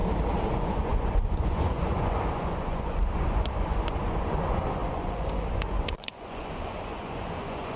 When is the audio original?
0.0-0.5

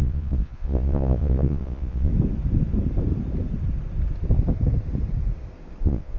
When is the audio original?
2.1-5.8